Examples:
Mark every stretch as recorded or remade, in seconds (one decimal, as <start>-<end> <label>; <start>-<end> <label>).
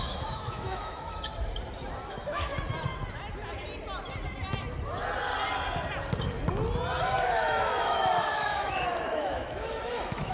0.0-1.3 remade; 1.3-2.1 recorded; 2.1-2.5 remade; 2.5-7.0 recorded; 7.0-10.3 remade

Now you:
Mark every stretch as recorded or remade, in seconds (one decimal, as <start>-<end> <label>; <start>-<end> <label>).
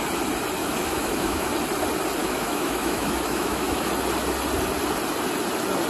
0.0-0.6 recorded; 0.6-1.5 remade; 1.5-2.2 recorded; 2.2-3.9 remade; 3.9-5.9 recorded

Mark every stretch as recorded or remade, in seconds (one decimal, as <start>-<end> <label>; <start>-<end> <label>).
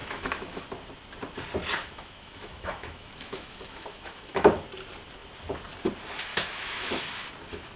0.0-0.6 remade; 0.6-1.8 recorded; 1.8-4.5 remade; 4.5-6.3 recorded; 6.3-7.0 remade; 7.0-7.8 recorded